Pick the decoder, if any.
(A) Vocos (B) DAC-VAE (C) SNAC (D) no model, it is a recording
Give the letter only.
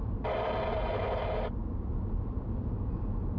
D